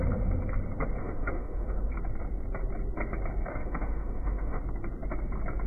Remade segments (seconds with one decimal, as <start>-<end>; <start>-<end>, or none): 1.0-1.9; 3.5-4.6